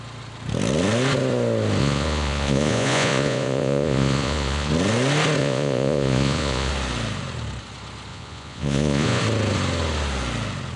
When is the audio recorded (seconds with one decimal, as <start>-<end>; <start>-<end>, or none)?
0.0-1.8; 4.7-5.4; 6.7-8.1; 9.2-10.8